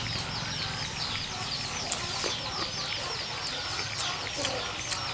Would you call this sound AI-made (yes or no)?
no